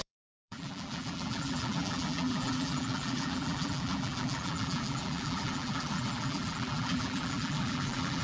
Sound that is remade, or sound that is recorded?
remade